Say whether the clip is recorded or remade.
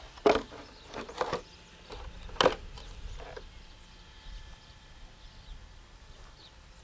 recorded